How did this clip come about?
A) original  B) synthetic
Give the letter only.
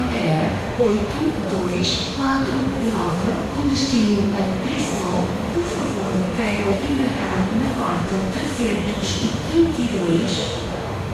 B